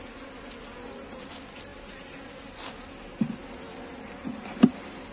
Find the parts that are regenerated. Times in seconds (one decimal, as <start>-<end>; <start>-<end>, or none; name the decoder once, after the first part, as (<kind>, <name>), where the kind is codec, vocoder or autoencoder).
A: none